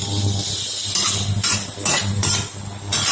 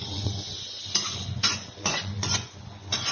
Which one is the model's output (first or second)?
second